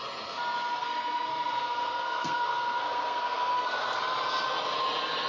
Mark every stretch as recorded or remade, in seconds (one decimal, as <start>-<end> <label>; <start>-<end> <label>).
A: 0.0-0.8 recorded; 0.8-4.0 remade; 4.0-5.3 recorded